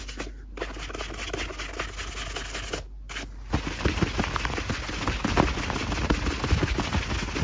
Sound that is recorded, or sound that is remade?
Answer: recorded